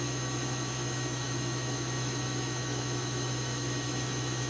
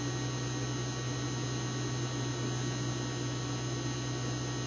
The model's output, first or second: first